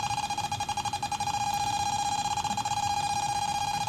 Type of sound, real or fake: real